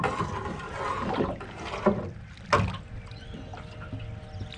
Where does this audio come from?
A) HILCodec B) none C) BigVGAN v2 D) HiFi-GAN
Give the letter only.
B